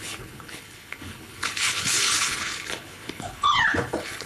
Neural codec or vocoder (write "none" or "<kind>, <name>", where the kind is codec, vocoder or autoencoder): codec, HILCodec